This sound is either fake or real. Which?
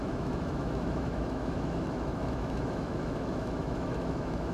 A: fake